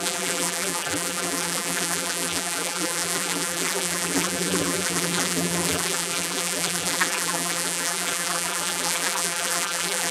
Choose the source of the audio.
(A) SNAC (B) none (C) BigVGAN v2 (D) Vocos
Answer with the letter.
C